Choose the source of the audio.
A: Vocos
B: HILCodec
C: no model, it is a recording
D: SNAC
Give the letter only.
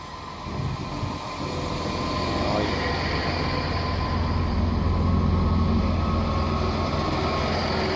C